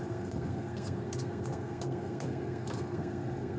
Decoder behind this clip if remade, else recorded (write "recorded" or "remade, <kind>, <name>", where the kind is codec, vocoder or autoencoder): remade, codec, SNAC